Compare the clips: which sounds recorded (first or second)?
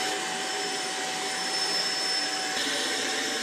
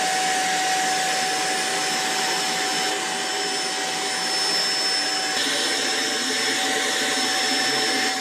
second